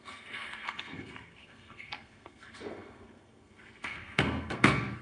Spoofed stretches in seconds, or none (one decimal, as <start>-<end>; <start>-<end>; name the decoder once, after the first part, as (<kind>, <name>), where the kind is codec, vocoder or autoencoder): 0.0-5.0 (codec, SNAC)